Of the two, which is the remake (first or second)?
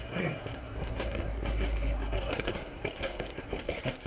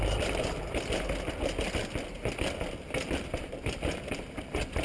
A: first